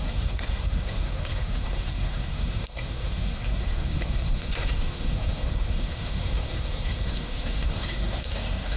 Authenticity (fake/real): fake